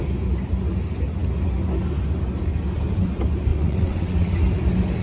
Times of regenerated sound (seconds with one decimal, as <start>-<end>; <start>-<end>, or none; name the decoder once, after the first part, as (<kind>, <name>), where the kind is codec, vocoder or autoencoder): 3.5-4.3 (vocoder, WaveNeXt)